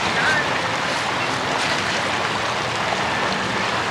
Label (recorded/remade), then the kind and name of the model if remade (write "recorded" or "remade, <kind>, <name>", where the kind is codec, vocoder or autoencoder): recorded